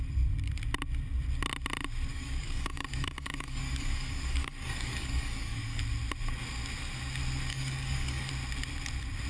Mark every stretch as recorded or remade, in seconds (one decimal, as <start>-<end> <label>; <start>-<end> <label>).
0.0-2.1 recorded; 2.1-5.8 remade; 5.8-7.5 recorded; 7.5-8.3 remade; 8.3-9.3 recorded